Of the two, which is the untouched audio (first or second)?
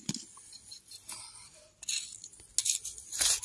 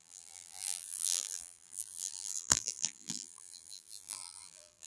first